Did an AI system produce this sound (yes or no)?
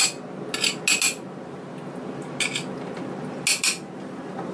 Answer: no